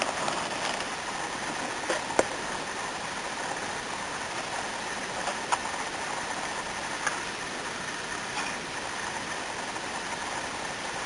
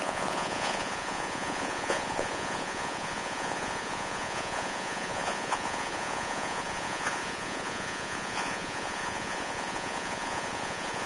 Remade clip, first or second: second